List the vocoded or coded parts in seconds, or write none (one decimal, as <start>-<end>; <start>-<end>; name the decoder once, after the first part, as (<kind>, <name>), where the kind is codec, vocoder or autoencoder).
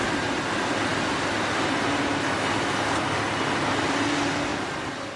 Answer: 0.0-0.9 (vocoder, BigVGAN v2); 3.7-4.5